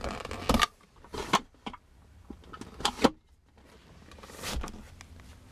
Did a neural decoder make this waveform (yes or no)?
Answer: no